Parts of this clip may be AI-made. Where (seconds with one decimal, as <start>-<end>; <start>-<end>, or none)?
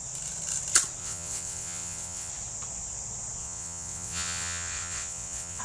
1.0-2.3; 3.4-5.6